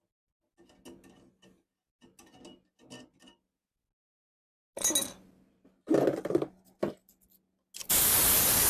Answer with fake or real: real